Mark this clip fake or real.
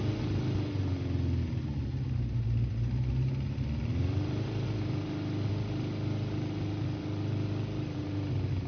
real